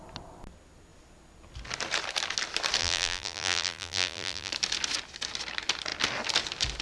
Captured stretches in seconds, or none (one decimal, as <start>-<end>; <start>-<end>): 0.0-2.8; 4.5-6.8